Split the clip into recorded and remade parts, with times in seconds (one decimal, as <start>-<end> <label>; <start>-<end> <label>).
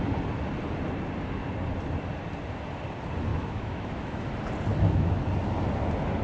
0.0-3.3 recorded; 3.3-4.3 remade; 4.3-4.7 recorded; 4.7-5.2 remade; 5.2-6.2 recorded